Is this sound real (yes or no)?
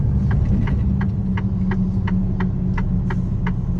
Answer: yes